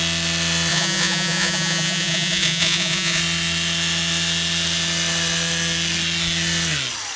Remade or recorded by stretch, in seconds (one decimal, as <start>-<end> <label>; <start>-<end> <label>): 0.0-0.7 recorded; 0.7-3.2 remade; 3.2-7.2 recorded